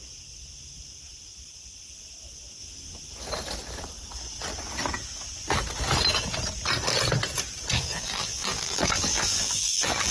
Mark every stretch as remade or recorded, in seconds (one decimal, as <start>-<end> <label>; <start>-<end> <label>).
0.0-7.7 recorded; 7.7-10.1 remade